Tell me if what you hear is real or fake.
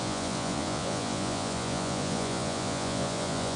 fake